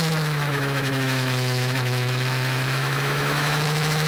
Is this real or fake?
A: fake